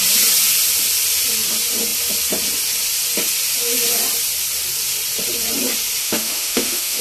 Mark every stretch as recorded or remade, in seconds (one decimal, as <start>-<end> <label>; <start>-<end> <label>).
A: 0.0-6.0 recorded; 6.0-7.0 remade